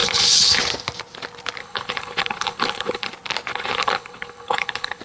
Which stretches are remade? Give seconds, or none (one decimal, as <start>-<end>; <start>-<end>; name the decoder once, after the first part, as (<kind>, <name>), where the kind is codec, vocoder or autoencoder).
0.0-0.6 (codec, HILCodec); 1.6-3.1; 3.5-5.0